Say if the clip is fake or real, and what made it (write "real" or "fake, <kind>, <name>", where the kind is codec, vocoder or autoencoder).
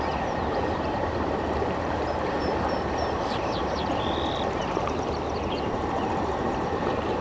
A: fake, vocoder, BigVGAN v2